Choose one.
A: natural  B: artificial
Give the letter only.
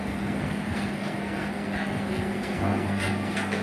B